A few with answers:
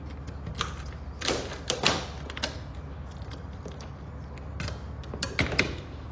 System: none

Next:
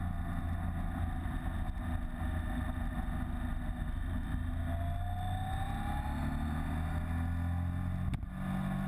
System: none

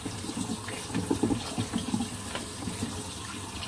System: none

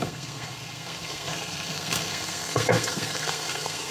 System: codec, SNAC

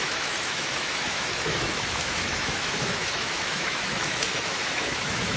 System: autoencoder, DAC-VAE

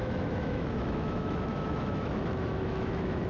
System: autoencoder, DAC-VAE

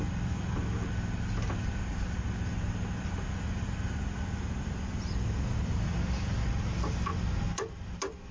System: none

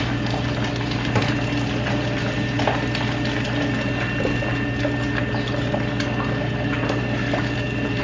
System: none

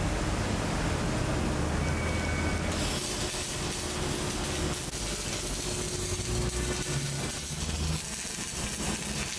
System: none